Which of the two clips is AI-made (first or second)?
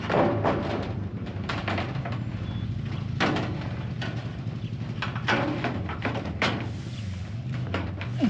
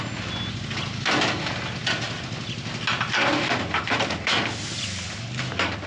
first